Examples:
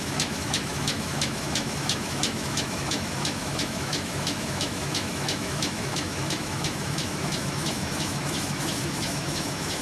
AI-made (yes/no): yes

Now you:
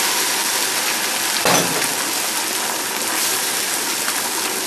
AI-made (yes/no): no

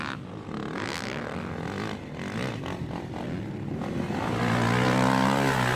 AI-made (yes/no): no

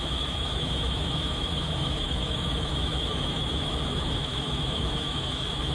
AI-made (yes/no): yes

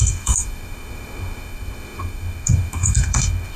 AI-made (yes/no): yes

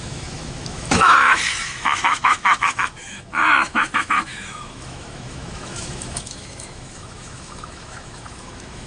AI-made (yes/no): yes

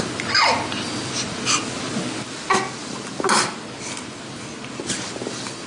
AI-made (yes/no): no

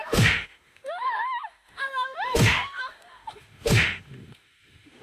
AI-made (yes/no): yes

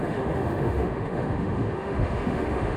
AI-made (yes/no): yes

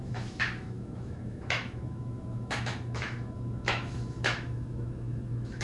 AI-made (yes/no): yes